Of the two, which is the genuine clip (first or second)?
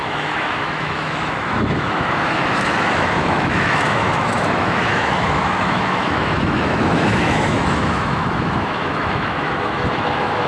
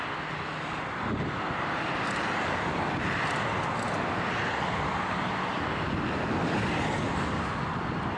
second